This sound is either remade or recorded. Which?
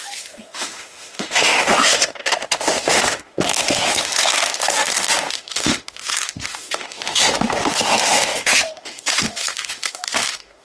remade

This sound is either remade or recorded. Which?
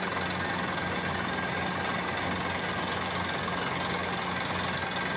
recorded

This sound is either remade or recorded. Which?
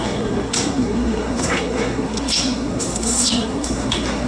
remade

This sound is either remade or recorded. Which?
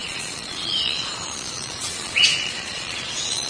remade